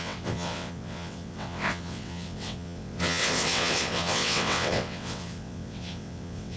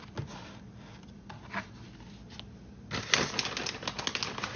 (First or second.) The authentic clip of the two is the second